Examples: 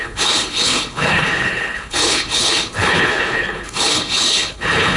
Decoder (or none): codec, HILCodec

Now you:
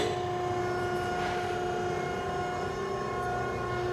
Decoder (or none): none